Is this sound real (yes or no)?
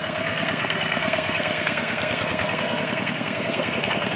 no